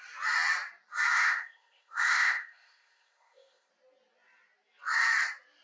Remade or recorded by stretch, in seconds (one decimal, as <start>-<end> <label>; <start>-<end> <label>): 0.0-1.1 recorded; 1.1-3.7 remade; 3.7-5.6 recorded